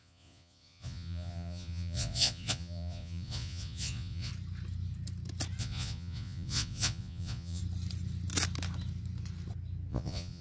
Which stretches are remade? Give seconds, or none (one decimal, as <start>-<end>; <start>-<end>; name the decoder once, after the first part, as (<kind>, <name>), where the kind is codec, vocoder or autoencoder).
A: 0.0-4.3 (vocoder, Vocos); 5.6-7.6; 9.9-10.4